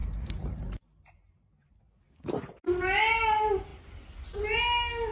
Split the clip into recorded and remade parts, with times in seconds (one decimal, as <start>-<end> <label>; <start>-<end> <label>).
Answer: 0.0-1.8 remade; 1.8-5.1 recorded